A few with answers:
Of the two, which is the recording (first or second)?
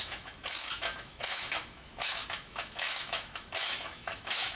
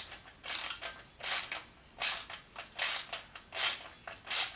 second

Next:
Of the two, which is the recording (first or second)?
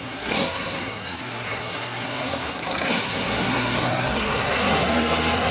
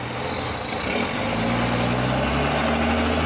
second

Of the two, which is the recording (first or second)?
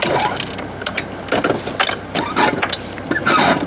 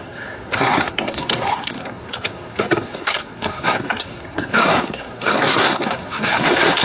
first